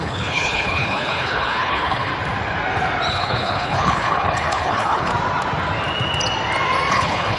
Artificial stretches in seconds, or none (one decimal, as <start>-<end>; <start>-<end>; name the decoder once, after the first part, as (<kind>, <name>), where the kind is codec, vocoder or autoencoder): 0.0-2.1 (codec, HILCodec); 3.1-5.1; 6.9-7.4